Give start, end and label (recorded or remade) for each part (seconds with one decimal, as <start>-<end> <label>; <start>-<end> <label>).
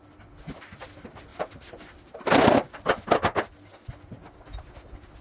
0.0-1.3 recorded; 1.3-2.9 remade; 2.9-5.2 recorded